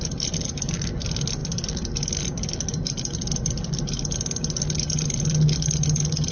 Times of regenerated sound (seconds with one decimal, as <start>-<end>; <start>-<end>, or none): none